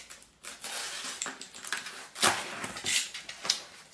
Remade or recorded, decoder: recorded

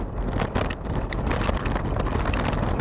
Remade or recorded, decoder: recorded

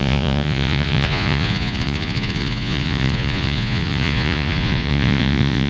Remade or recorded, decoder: remade, vocoder, Vocos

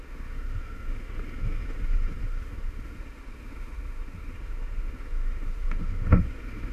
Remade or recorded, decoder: remade, autoencoder, DAC-VAE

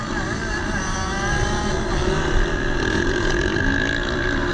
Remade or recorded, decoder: recorded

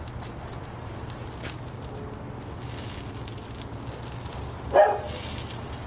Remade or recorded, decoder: recorded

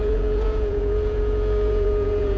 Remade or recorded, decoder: remade, vocoder, Vocos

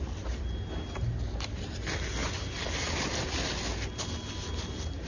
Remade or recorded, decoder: recorded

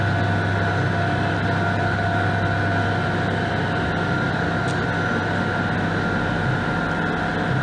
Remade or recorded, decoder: recorded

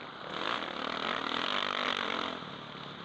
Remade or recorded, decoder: recorded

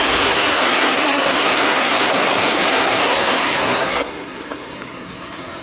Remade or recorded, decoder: remade, codec, SNAC